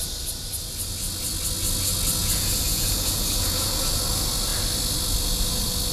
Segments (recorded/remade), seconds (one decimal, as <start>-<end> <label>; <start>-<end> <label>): 0.0-2.2 recorded; 2.2-3.7 remade; 3.7-5.9 recorded